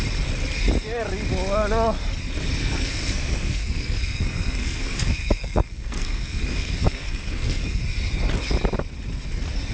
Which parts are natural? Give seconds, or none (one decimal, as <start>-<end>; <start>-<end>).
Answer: 0.0-2.6; 7.8-9.7